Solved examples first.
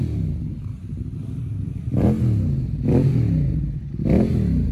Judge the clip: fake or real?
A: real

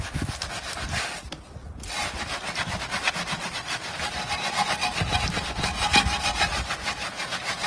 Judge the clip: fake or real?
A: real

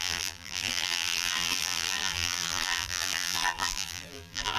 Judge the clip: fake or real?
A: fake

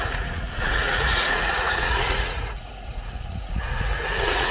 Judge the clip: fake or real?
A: fake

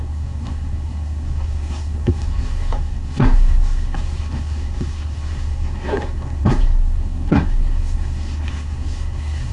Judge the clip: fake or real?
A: fake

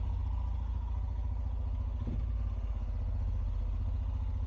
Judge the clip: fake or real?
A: real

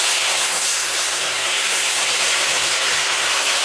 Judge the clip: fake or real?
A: fake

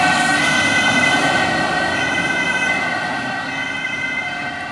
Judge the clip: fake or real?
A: real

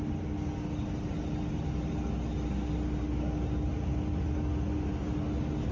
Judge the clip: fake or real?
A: real